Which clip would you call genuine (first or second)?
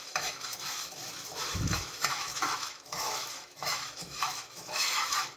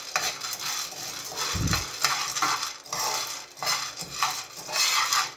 second